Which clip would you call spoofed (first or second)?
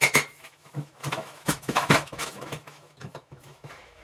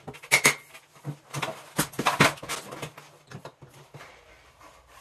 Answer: first